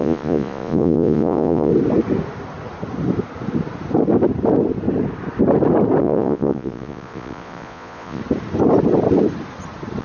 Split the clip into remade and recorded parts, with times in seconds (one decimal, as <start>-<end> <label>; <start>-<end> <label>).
0.0-1.7 remade; 1.7-6.0 recorded; 6.0-8.2 remade; 8.2-10.0 recorded